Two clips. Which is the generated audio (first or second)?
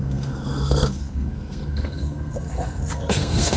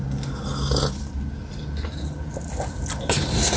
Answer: first